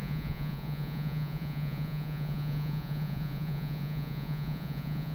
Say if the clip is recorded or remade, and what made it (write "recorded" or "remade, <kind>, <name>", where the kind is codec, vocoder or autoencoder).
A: remade, vocoder, Vocos